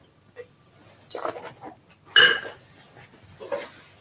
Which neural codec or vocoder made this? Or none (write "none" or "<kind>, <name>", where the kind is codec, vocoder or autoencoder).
none